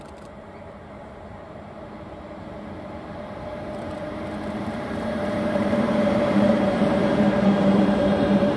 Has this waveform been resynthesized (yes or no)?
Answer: yes